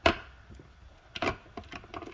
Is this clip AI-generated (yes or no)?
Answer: no